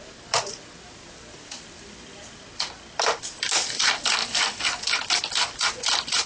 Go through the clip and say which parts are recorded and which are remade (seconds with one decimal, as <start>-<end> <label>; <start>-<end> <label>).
0.0-6.3 recorded

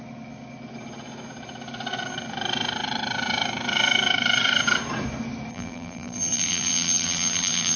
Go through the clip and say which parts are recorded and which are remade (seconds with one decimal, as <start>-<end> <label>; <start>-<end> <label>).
0.0-5.5 recorded; 5.5-7.8 remade

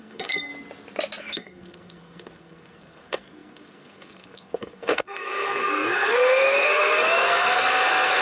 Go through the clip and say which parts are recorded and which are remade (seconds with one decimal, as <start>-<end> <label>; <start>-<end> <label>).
0.0-0.5 remade; 0.5-1.2 recorded; 1.2-8.2 remade

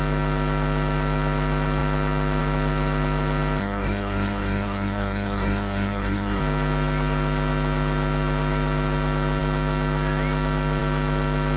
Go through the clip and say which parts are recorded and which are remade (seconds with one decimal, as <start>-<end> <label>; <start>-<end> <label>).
0.0-3.6 recorded; 3.6-6.4 remade; 6.4-11.6 recorded

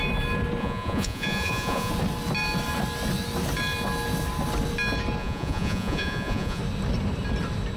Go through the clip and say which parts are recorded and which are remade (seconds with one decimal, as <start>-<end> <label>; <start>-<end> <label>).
0.0-0.6 recorded; 0.6-1.9 remade; 1.9-5.2 recorded; 5.2-6.6 remade; 6.6-7.8 recorded

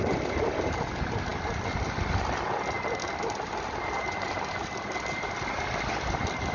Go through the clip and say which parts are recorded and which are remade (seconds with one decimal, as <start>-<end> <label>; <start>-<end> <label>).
0.0-6.5 recorded

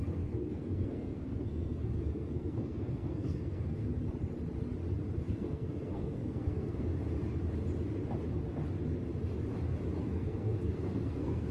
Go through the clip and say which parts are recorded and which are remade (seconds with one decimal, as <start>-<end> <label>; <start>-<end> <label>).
0.0-4.0 remade; 4.0-5.2 recorded; 5.2-6.9 remade; 6.9-10.0 recorded; 10.0-11.5 remade

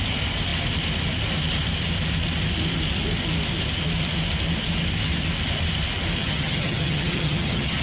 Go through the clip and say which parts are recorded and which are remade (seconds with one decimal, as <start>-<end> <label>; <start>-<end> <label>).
0.0-6.2 recorded; 6.2-7.8 remade